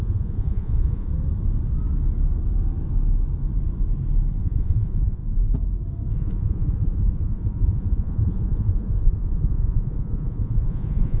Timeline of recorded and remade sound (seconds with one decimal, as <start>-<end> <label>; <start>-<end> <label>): 0.0-1.1 remade; 1.1-4.4 recorded; 4.4-5.2 remade; 5.2-6.1 recorded; 6.1-11.2 remade